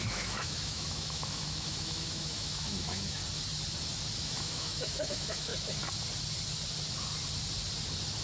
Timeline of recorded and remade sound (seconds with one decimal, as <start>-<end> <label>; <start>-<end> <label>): 0.0-3.2 remade; 3.2-4.2 recorded; 4.2-5.5 remade; 5.5-8.2 recorded